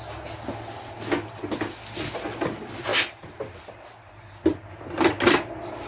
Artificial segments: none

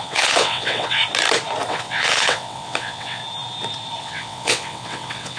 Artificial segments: 0.0-1.0; 1.7-3.2; 4.0-5.4

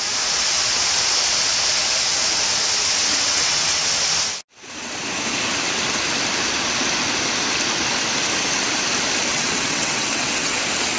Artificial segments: 3.1-4.0; 9.3-10.6

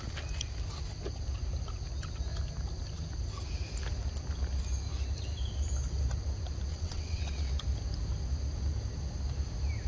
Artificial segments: 6.7-7.5